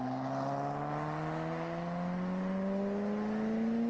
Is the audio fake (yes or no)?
no